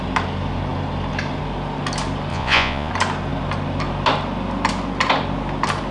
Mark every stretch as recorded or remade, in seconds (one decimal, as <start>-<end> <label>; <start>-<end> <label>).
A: 0.0-2.3 recorded; 2.3-2.9 remade; 2.9-5.9 recorded